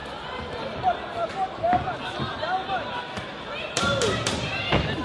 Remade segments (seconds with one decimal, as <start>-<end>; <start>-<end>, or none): none